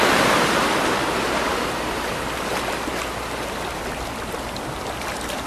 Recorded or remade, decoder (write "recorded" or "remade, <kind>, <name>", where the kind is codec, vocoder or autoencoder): remade, vocoder, BigVGAN v2